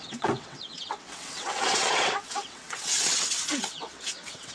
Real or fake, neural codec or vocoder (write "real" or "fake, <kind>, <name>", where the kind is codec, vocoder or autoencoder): fake, vocoder, WaveNeXt